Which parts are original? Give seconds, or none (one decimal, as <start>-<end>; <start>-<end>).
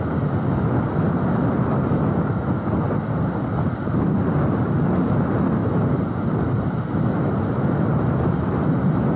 0.0-5.6; 6.3-9.2